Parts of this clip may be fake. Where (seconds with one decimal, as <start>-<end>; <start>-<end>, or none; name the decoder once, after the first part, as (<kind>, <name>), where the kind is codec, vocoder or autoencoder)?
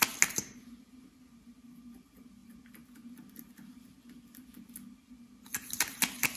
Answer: none